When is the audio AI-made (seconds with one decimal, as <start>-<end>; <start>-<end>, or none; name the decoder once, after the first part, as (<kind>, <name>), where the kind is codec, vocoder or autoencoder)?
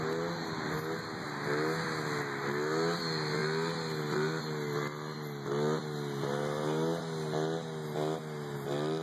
none